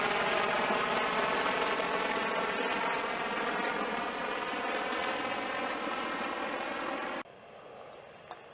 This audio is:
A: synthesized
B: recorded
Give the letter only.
B